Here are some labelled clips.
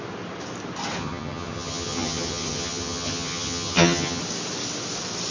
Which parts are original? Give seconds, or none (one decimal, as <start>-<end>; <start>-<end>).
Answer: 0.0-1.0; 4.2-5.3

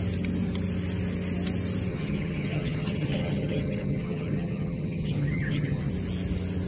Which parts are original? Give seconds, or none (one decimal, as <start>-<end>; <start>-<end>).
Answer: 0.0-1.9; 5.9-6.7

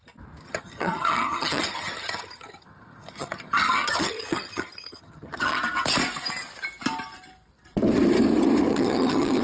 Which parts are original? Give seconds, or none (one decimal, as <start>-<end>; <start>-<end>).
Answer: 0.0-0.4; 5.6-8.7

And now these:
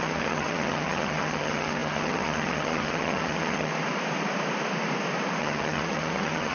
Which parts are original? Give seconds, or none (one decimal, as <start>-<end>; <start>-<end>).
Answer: 3.7-5.4

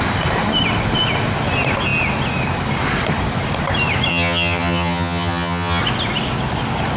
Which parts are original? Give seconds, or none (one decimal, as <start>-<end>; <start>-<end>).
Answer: 0.0-4.1; 5.8-7.0